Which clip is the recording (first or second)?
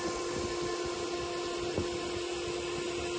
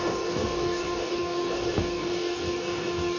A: first